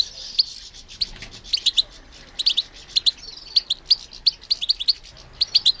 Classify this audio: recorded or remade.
recorded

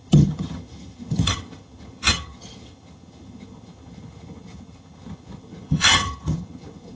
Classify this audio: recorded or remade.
remade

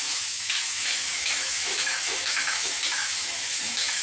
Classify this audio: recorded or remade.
remade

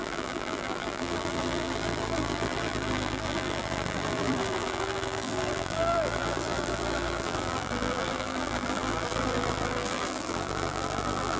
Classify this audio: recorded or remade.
remade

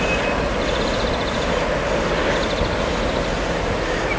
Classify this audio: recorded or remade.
recorded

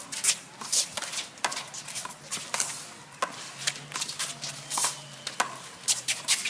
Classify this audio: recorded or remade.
recorded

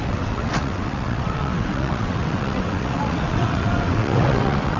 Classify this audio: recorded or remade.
remade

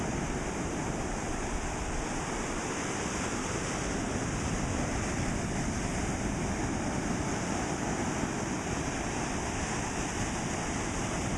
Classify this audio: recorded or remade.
recorded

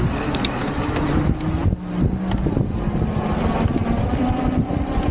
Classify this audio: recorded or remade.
recorded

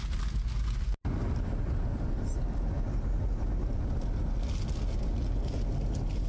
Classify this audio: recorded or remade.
recorded